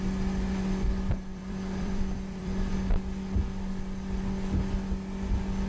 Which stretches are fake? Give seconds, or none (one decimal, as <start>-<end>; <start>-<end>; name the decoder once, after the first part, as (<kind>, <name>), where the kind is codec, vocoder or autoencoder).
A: 1.3-2.7 (vocoder, BigVGAN v2)